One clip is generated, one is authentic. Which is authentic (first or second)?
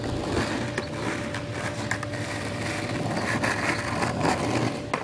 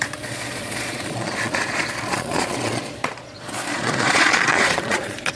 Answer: first